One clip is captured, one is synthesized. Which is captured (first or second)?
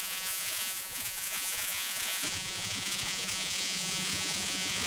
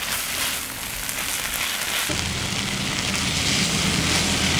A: second